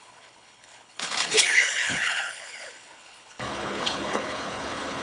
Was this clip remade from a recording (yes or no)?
yes